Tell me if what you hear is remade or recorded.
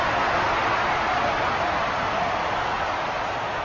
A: recorded